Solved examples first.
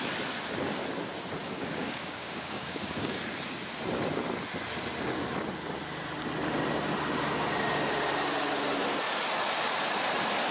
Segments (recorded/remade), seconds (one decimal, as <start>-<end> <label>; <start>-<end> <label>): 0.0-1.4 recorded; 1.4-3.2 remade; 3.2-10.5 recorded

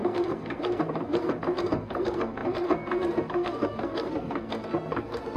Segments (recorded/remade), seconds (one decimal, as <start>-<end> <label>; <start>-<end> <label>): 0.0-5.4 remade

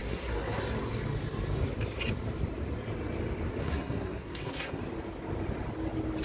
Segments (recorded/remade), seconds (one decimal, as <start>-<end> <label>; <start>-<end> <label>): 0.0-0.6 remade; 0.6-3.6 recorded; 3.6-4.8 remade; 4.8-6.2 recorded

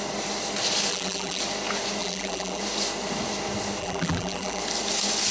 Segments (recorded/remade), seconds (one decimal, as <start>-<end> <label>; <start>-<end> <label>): 0.0-0.9 recorded; 0.9-1.4 remade; 1.4-2.0 recorded; 2.0-2.6 remade; 2.6-3.8 recorded; 3.8-4.6 remade; 4.6-5.3 recorded

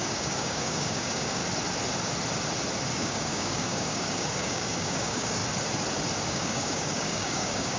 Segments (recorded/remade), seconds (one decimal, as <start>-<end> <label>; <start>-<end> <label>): 0.0-1.4 remade; 1.4-2.9 recorded; 2.9-5.4 remade; 5.4-6.2 recorded; 6.2-7.8 remade

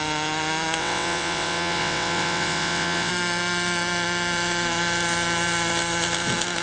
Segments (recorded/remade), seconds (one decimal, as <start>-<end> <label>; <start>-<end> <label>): 0.0-0.8 recorded; 0.8-3.1 remade; 3.1-6.6 recorded

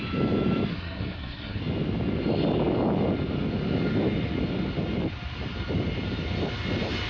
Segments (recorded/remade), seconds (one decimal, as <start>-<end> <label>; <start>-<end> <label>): 0.0-0.7 recorded; 0.7-1.6 remade; 1.6-7.1 recorded